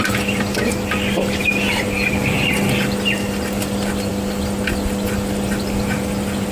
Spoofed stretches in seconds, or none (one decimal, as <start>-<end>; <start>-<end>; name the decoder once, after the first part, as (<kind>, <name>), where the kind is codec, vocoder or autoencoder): none